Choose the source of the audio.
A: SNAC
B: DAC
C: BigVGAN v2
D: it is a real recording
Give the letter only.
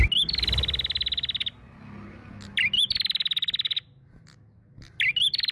D